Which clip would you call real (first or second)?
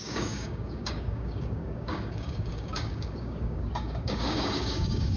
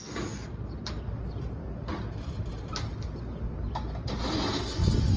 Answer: second